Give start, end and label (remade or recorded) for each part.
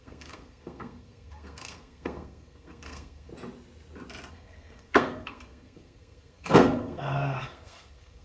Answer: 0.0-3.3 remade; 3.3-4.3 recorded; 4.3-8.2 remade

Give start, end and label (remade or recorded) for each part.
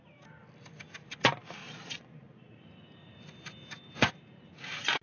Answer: 0.0-1.6 recorded; 1.6-2.6 remade; 2.6-5.0 recorded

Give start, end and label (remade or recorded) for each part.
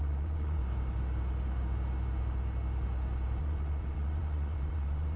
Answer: 0.0-0.6 remade; 0.6-3.4 recorded; 3.4-5.2 remade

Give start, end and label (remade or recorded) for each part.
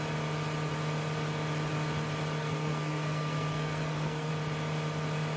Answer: 0.0-2.4 recorded; 2.4-4.3 remade; 4.3-5.4 recorded